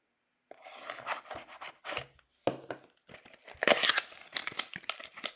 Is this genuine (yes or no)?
yes